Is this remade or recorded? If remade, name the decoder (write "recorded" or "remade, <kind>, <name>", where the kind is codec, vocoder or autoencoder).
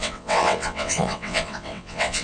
remade, vocoder, WaveNeXt